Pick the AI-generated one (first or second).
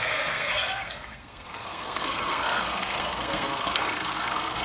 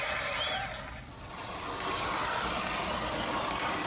first